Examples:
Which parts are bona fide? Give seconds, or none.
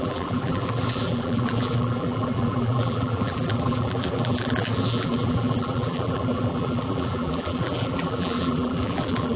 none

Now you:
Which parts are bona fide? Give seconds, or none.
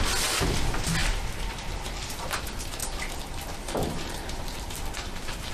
0.0-2.8